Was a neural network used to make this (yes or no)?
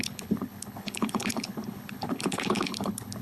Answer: yes